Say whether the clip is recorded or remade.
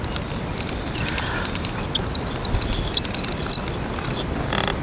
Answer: recorded